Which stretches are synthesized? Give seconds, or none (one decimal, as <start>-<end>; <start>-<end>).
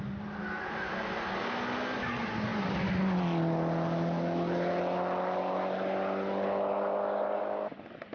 none